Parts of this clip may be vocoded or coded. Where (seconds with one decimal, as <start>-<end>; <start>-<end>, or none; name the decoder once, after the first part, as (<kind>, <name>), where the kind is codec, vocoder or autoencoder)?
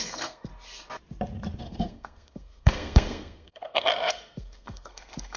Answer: 0.0-0.5 (codec, SNAC); 1.6-5.4